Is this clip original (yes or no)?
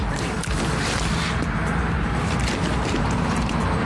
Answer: yes